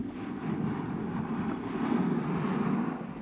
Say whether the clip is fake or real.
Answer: real